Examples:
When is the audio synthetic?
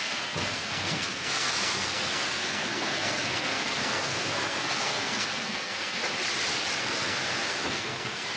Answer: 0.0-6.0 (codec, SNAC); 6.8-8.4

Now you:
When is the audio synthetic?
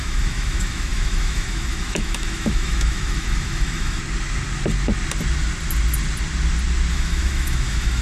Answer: 0.0-4.0 (autoencoder, DAC-VAE); 6.9-8.0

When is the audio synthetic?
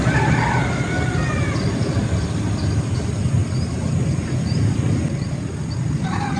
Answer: none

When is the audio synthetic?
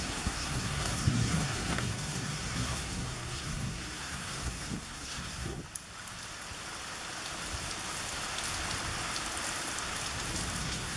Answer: 0.0-5.6 (codec, SNAC); 10.6-11.0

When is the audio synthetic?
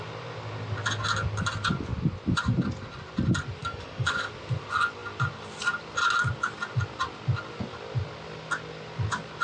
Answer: 3.6-4.3 (codec, DAC)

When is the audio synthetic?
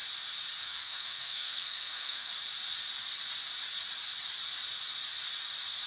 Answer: 0.6-2.3 (codec, SNAC)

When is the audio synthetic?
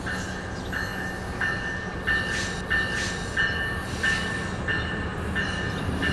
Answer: none